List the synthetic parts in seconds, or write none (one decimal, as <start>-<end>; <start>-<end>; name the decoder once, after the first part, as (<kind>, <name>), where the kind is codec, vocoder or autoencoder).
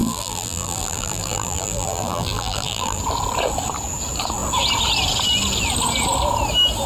0.0-3.0 (vocoder, BigVGAN v2)